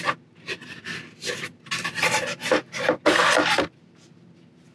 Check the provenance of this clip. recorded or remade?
recorded